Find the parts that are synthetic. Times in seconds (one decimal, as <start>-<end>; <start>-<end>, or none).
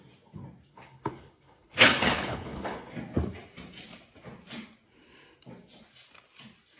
0.7-2.9